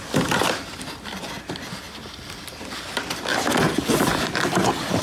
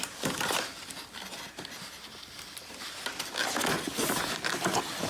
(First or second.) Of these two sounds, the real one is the second